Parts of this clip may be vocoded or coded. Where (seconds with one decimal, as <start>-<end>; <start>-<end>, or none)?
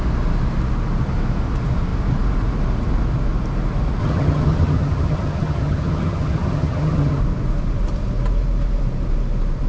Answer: 4.0-7.2